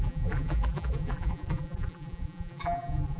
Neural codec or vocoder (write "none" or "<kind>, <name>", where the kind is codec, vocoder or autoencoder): vocoder, BigVGAN v2